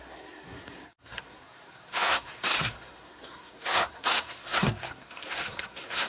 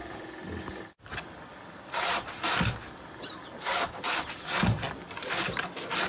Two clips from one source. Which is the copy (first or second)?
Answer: first